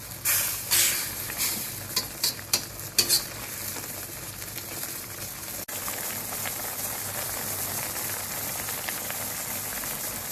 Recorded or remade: recorded